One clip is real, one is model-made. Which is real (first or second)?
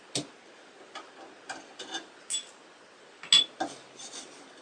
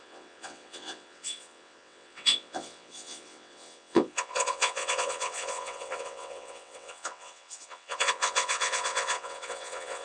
first